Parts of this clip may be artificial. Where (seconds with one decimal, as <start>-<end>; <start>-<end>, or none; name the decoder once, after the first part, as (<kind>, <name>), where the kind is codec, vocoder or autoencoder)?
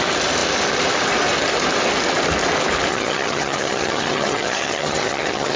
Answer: 2.9-5.6 (vocoder, HiFi-GAN)